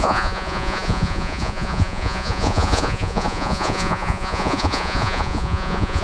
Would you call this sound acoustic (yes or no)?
no